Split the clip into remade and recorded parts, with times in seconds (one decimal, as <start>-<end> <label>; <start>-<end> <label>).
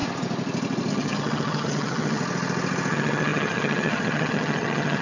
0.0-0.9 recorded; 0.9-2.2 remade; 2.2-2.9 recorded; 2.9-5.0 remade